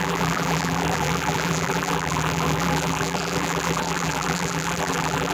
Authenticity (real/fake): fake